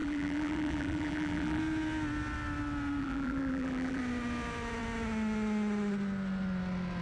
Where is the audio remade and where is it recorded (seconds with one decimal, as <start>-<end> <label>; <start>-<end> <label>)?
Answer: 0.0-1.6 remade; 1.6-3.0 recorded; 3.0-4.0 remade; 4.0-7.0 recorded